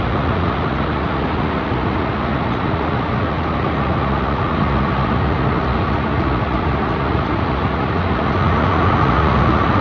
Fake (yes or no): yes